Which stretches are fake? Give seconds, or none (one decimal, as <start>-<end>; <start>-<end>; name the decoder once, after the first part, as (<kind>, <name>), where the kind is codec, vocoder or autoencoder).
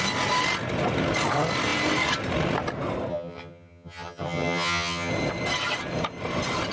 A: 3.1-5.1 (vocoder, HiFi-GAN)